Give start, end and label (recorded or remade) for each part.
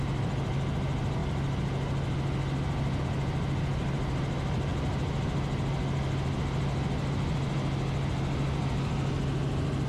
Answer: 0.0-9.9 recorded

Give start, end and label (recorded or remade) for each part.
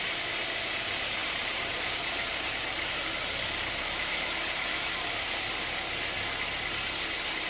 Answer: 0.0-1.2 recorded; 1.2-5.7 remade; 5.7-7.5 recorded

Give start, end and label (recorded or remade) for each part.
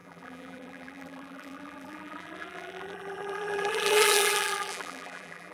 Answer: 0.0-5.5 remade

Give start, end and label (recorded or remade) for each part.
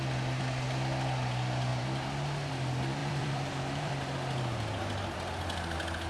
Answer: 0.0-1.7 recorded; 1.7-2.5 remade; 2.5-3.0 recorded; 3.0-3.9 remade; 3.9-6.1 recorded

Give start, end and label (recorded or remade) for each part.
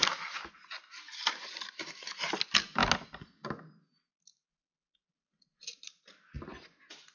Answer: 0.0-7.1 recorded